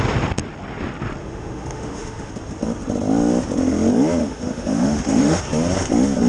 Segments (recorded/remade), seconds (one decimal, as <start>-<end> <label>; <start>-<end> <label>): 0.0-1.2 recorded; 1.2-2.3 remade; 2.3-4.2 recorded; 4.2-5.4 remade; 5.4-6.3 recorded